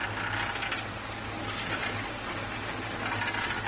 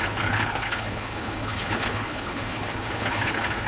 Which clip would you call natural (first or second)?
first